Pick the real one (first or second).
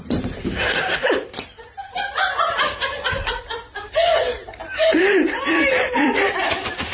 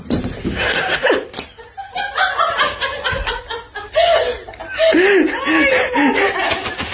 second